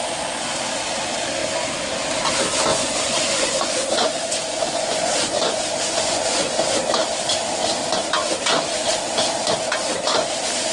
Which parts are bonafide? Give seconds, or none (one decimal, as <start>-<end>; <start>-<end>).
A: 0.0-2.7; 6.7-10.7